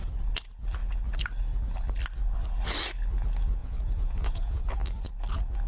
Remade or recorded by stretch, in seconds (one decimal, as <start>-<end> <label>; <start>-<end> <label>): 0.0-3.6 recorded; 3.6-4.8 remade; 4.8-5.7 recorded